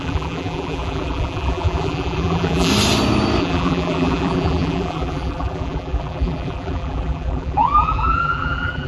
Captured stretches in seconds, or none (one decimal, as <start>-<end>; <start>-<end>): 2.7-3.4